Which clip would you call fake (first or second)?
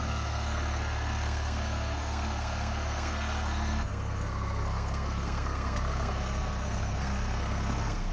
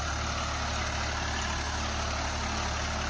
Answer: first